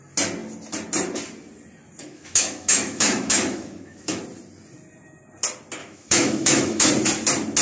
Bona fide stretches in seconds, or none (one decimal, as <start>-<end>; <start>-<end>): 0.0-2.0; 4.2-5.8; 6.9-7.6